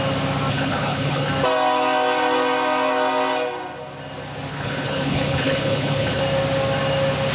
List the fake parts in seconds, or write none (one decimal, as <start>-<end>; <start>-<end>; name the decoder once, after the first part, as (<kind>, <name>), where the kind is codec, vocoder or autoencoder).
0.5-1.3 (codec, HILCodec); 4.5-6.2